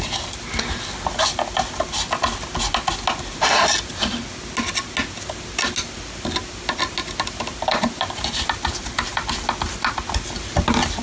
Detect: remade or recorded recorded